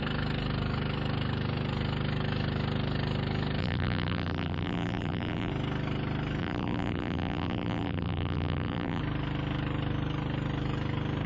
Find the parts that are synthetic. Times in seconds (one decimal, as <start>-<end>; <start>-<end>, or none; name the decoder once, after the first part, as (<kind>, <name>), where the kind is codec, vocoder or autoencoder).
3.6-5.5 (vocoder, BigVGAN v2); 6.4-9.0